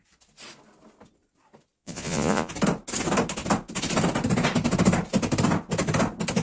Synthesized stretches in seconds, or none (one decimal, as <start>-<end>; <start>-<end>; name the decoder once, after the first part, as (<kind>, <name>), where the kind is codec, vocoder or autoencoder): 1.8-2.5 (vocoder, Vocos)